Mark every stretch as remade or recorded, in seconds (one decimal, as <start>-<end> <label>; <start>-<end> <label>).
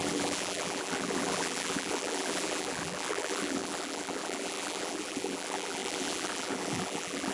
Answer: 0.0-7.3 remade